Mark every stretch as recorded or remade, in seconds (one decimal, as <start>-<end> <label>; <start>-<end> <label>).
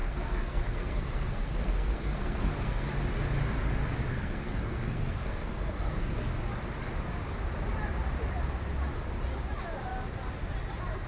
0.0-2.9 remade; 2.9-4.1 recorded; 4.1-6.3 remade; 6.3-11.1 recorded